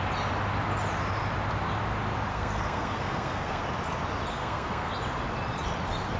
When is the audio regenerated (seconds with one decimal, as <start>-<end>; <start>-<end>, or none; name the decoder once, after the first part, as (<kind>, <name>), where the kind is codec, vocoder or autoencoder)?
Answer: 2.3-3.6 (codec, SNAC); 4.3-4.9